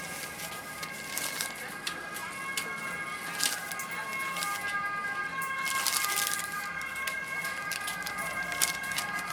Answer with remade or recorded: recorded